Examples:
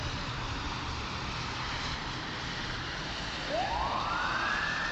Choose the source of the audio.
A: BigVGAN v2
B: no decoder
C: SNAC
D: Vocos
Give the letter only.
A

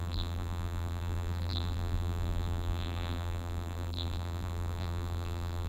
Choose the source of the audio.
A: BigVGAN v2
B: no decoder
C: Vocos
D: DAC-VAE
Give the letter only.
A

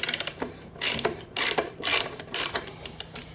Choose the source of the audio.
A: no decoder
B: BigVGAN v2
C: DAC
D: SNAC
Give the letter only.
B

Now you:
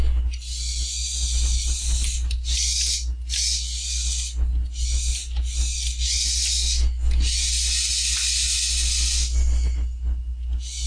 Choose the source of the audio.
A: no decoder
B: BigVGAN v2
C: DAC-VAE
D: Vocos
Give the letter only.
A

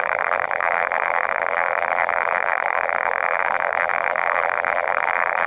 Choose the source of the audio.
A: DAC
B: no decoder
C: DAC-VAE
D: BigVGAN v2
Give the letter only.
D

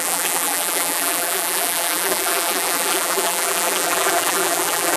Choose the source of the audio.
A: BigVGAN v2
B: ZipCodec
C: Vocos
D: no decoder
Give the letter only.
A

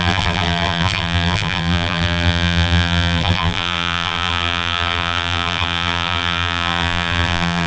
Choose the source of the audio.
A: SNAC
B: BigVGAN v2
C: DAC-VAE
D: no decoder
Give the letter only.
B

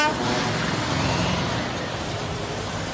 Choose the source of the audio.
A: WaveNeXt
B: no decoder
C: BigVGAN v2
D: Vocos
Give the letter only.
C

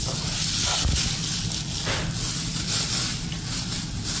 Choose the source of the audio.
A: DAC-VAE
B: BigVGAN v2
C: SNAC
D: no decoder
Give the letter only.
D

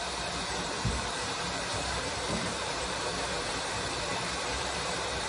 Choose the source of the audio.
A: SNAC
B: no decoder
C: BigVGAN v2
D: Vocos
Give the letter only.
C